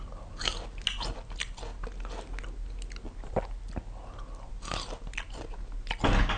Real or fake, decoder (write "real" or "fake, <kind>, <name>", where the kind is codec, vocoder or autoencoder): real